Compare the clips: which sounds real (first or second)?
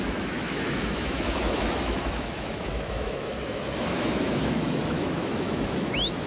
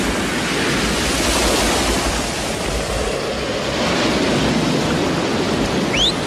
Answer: second